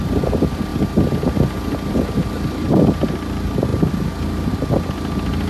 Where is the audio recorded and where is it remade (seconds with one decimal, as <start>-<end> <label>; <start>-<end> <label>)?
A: 0.0-5.5 recorded